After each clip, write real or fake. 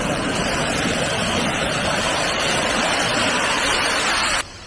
fake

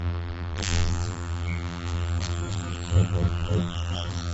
fake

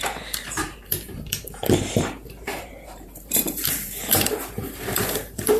fake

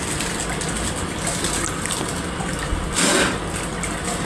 real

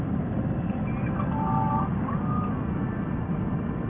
real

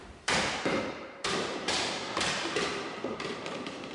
fake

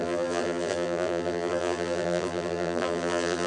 fake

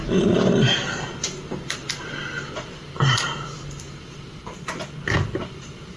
fake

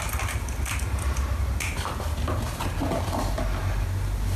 real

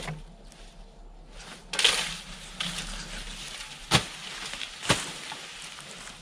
real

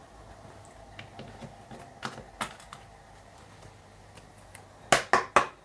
real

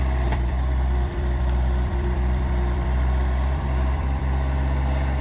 fake